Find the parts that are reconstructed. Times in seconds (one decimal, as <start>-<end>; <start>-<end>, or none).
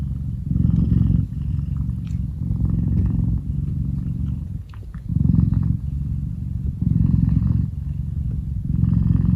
0.0-9.4